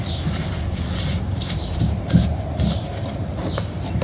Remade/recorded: remade